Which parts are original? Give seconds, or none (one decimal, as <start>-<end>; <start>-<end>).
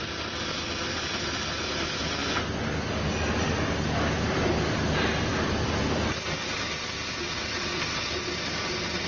0.0-9.1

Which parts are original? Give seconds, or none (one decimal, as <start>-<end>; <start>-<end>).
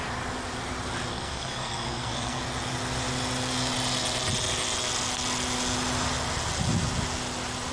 0.0-1.1; 2.4-7.7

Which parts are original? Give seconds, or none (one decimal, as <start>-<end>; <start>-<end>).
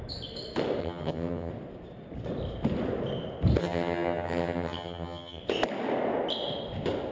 0.0-0.8; 1.5-3.6; 5.4-7.1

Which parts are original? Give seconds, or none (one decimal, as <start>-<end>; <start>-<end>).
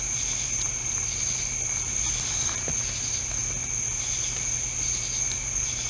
0.0-5.9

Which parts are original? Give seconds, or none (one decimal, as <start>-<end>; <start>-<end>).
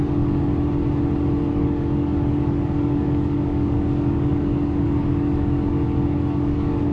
0.5-1.5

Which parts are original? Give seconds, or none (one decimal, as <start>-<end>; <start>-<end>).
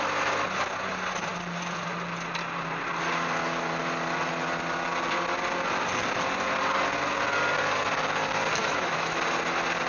0.0-8.6; 9.2-9.9